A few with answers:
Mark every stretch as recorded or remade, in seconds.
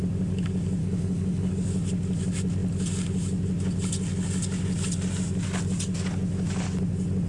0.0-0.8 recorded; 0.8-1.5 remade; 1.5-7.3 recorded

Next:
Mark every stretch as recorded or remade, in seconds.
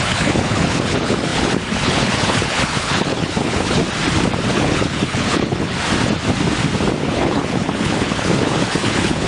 0.0-3.8 remade; 3.8-4.5 recorded; 4.5-5.7 remade; 5.7-7.0 recorded; 7.0-9.3 remade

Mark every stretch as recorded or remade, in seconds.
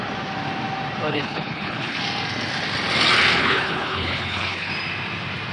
0.0-1.1 recorded; 1.1-2.0 remade; 2.0-3.4 recorded; 3.4-4.7 remade; 4.7-5.5 recorded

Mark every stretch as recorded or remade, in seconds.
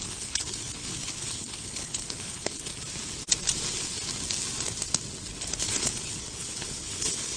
0.0-2.7 remade; 2.7-5.5 recorded; 5.5-7.4 remade